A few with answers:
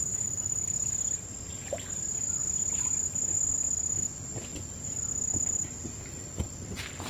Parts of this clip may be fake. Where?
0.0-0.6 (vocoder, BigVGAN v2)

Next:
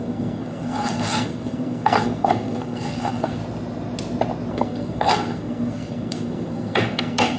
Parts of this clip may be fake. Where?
0.0-3.4 (codec, SNAC); 4.5-7.4